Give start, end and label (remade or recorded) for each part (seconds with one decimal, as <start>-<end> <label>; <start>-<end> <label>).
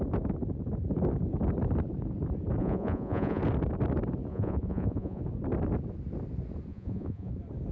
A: 0.0-2.6 recorded; 2.6-3.4 remade; 3.4-4.3 recorded; 4.3-5.2 remade; 5.2-6.7 recorded; 6.7-7.3 remade; 7.3-7.7 recorded